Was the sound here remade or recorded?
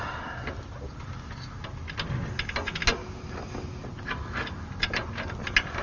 recorded